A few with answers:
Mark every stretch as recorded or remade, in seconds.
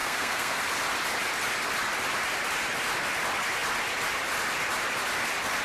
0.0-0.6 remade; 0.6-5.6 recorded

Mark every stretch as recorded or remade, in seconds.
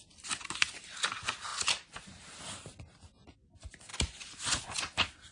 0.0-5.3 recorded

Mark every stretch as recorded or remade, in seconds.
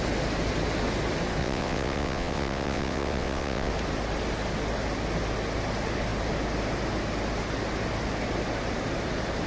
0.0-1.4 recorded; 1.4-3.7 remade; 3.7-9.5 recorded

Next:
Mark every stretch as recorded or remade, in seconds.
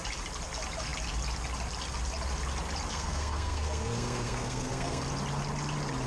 0.0-2.9 recorded; 2.9-5.0 remade; 5.0-6.1 recorded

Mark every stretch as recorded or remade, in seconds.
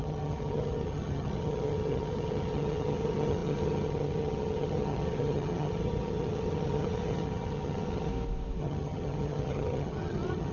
0.0-8.1 remade; 8.1-8.6 recorded; 8.6-10.5 remade